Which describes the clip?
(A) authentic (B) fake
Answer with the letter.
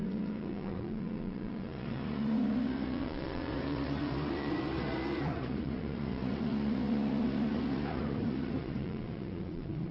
B